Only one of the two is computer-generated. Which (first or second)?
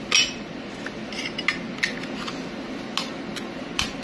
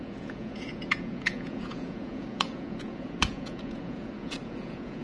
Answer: second